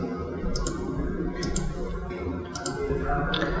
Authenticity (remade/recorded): recorded